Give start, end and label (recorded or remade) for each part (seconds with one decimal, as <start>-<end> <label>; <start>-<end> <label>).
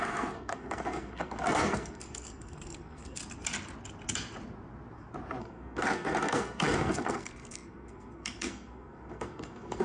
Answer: 0.0-3.2 remade; 3.2-5.4 recorded; 5.4-9.8 remade